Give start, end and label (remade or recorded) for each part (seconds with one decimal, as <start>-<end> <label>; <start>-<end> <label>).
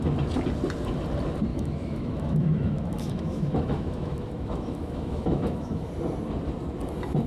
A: 0.0-1.5 recorded; 1.5-5.9 remade; 5.9-7.3 recorded